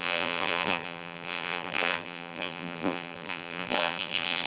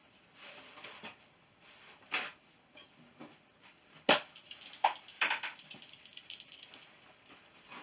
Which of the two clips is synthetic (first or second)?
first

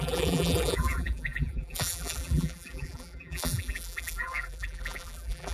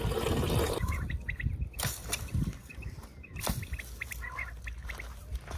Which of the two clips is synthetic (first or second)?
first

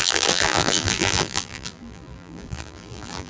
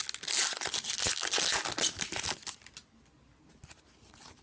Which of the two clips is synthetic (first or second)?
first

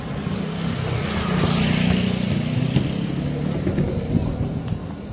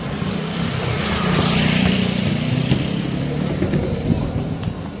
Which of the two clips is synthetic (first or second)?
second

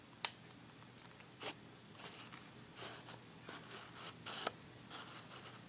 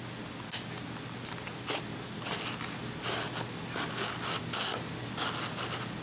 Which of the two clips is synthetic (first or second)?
first